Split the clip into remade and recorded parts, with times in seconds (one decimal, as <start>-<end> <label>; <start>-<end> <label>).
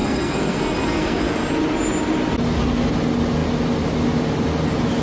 0.0-1.2 remade; 1.2-5.0 recorded